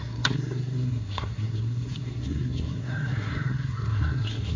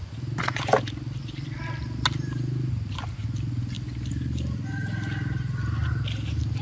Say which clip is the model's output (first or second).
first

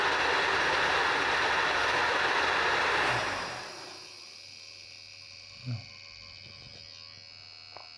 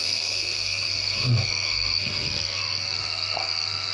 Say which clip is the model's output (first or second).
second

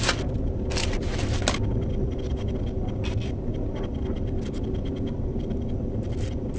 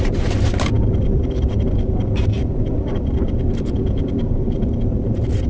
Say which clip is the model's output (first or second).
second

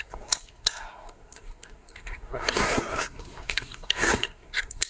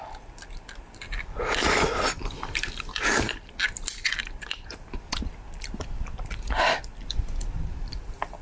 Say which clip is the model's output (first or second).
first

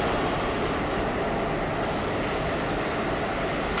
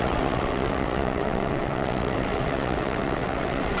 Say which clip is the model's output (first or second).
second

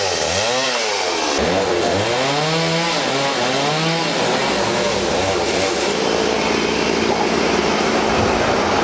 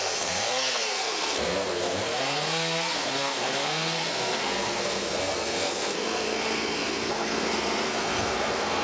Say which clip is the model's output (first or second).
second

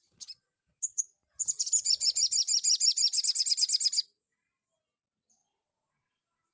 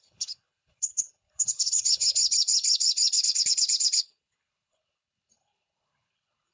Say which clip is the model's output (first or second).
second